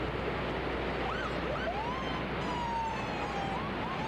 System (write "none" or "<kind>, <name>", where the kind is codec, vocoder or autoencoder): none